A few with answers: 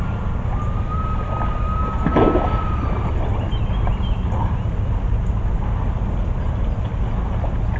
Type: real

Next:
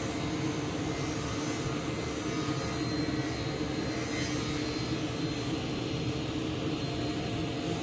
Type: real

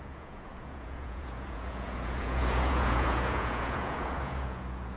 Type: fake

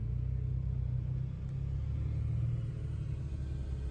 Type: real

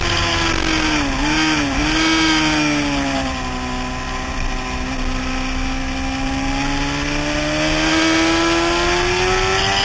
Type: real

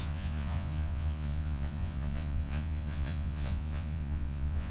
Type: fake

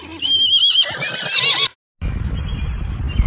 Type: real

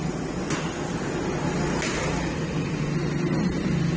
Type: real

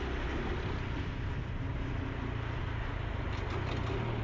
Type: real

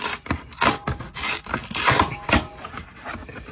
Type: real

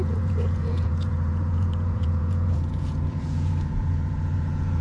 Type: fake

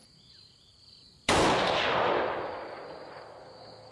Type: real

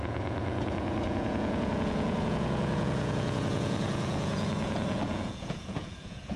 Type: fake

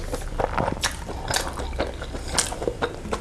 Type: real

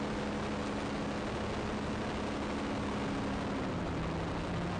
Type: real